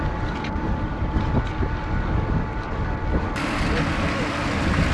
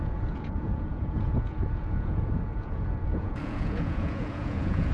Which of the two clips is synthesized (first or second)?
second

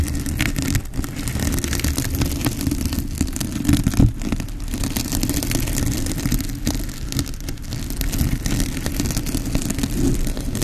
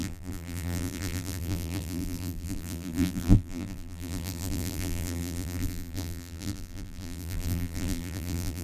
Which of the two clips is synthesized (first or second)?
second